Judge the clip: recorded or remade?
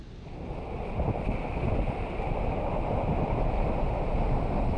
recorded